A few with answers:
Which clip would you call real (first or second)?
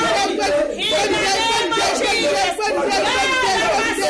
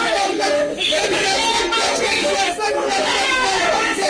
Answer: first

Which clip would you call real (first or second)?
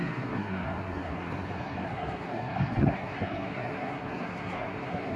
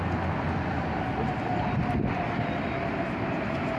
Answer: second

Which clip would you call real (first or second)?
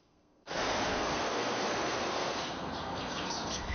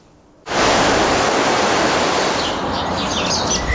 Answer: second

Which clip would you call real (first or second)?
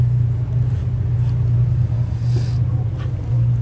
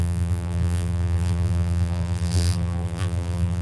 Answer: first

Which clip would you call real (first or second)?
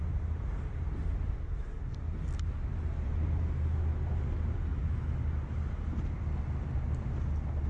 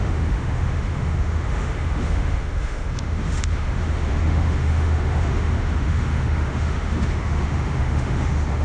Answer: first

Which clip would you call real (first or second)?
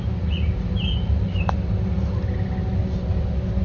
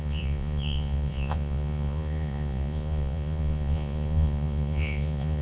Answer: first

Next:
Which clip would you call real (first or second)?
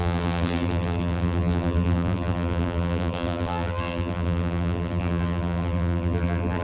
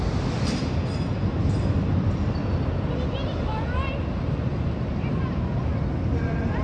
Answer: second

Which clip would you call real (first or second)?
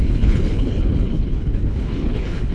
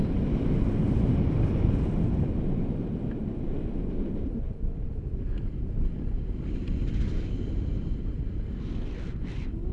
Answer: second